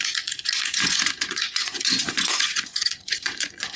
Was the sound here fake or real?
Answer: fake